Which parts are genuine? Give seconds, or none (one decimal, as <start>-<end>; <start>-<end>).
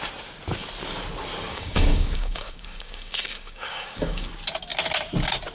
0.0-1.5; 4.3-5.5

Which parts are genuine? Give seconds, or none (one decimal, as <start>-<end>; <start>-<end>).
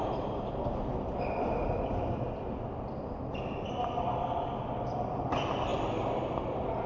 0.0-6.9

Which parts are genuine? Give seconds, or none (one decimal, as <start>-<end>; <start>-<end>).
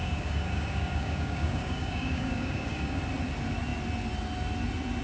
3.0-5.0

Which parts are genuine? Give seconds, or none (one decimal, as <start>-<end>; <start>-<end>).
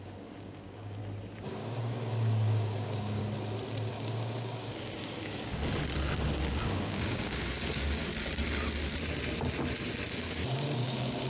1.0-1.5; 3.2-3.9; 5.6-6.5; 8.1-10.1